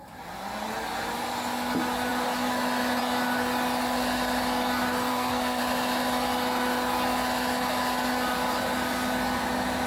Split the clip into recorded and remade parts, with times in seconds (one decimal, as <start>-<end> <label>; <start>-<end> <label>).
0.0-5.1 recorded; 5.1-5.6 remade; 5.6-9.9 recorded